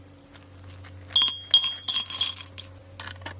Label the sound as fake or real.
real